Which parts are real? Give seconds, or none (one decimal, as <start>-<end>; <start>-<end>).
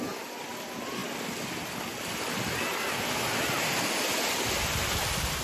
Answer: 0.0-5.4